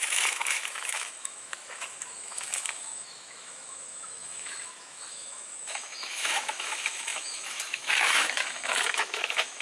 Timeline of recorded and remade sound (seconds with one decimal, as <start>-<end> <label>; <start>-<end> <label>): 0.0-9.6 remade